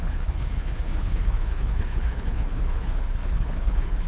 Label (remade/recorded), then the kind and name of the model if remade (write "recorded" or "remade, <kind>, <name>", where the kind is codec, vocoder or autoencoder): remade, codec, HILCodec